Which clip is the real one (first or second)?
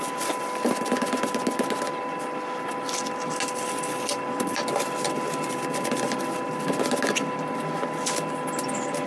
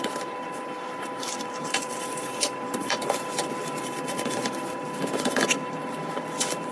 first